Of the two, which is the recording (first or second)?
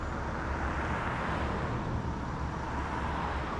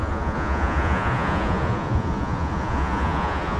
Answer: first